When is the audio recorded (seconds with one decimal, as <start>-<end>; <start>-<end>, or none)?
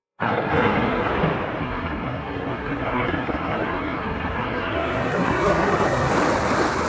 1.1-1.6; 6.1-6.9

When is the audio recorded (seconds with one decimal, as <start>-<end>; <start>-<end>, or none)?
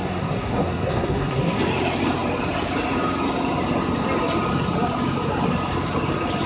1.6-6.5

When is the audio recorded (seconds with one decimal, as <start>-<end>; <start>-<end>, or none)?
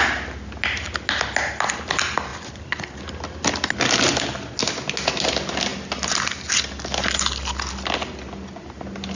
0.0-9.2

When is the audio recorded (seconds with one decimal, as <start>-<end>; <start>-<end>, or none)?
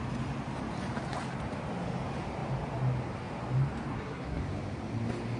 0.0-3.9; 4.4-5.4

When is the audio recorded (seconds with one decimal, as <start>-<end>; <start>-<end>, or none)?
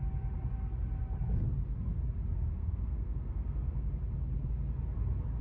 0.0-2.6; 3.9-5.4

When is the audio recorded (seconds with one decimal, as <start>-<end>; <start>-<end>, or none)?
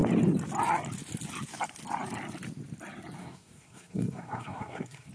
0.0-3.2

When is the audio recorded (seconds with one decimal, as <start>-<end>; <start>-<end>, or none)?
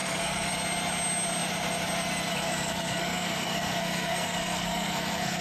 0.5-2.3